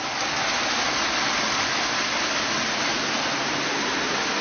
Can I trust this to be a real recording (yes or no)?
yes